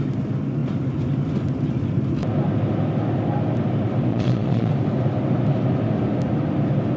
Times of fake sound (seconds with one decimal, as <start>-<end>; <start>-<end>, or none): 4.1-4.7